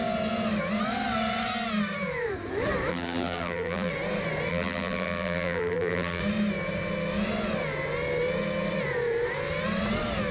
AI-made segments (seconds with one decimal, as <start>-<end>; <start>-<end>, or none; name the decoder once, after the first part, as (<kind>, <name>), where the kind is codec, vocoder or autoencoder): 2.9-3.9 (vocoder, BigVGAN v2); 4.5-6.2